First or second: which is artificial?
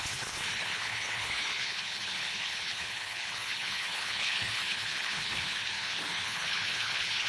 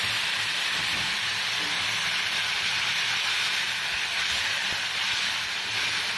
first